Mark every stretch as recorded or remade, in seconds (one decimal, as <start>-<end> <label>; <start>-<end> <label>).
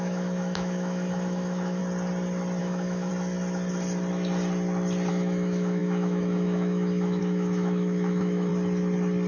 0.0-1.8 remade; 1.8-2.6 recorded; 2.6-3.1 remade; 3.1-5.1 recorded; 5.1-8.5 remade; 8.5-9.3 recorded